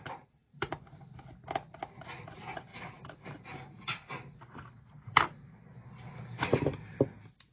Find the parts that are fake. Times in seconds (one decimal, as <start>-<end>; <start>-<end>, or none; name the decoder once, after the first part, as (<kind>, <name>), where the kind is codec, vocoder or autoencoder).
0.4-1.1 (vocoder, BigVGAN v2); 2.7-7.0